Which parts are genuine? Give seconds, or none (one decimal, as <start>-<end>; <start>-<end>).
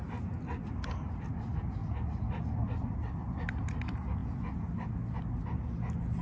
0.0-6.2